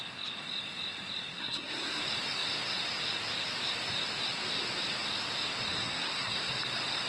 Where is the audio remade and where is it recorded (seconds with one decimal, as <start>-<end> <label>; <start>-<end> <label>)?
0.0-1.4 recorded; 1.4-2.0 remade; 2.0-5.7 recorded; 5.7-6.5 remade; 6.5-7.1 recorded